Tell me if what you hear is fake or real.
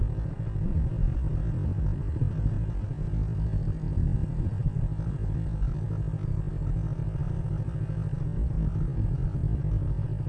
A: real